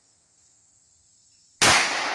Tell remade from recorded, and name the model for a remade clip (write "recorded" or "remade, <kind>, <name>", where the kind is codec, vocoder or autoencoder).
recorded